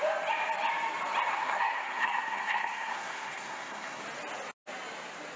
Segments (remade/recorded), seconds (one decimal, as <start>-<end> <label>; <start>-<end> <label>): 0.0-1.3 recorded; 1.3-4.0 remade; 4.0-5.4 recorded